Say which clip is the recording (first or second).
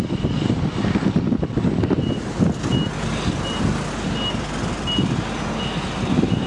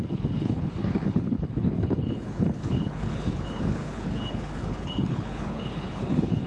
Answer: first